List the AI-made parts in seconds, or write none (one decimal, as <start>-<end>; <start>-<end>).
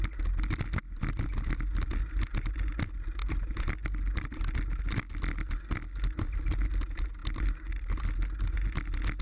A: none